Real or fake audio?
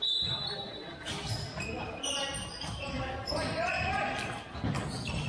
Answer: real